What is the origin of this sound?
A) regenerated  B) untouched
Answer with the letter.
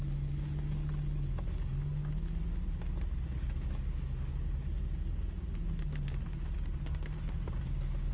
B